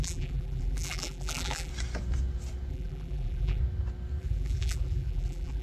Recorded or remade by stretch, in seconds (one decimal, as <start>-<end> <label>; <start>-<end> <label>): 0.0-1.7 remade; 1.7-2.7 recorded; 2.7-3.6 remade; 3.6-4.2 recorded; 4.2-5.6 remade